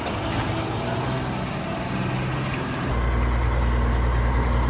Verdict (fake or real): real